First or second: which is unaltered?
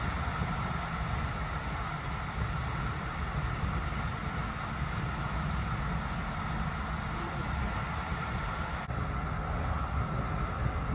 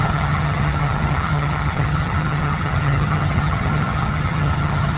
first